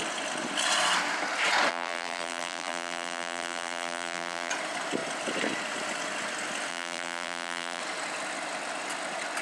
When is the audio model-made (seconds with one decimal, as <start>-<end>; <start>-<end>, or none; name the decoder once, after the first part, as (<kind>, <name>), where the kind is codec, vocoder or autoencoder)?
1.7-4.5 (vocoder, BigVGAN v2); 6.7-7.8